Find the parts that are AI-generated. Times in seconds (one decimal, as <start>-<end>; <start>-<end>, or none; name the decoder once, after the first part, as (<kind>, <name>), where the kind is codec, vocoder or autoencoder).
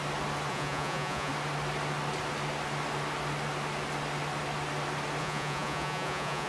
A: 0.5-1.3 (vocoder, Vocos); 5.2-6.5